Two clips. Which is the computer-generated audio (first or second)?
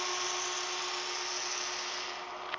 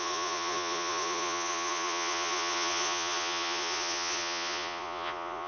second